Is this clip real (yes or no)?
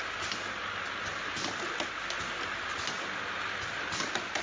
yes